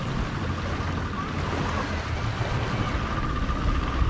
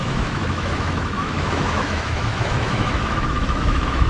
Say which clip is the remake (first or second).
second